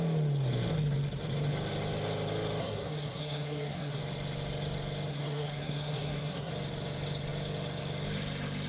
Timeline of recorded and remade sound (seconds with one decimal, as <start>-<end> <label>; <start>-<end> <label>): 0.0-2.6 recorded; 2.6-4.0 remade; 4.0-5.1 recorded; 5.1-6.5 remade; 6.5-8.7 recorded